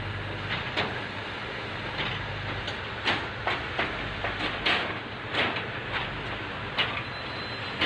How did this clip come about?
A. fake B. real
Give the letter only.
B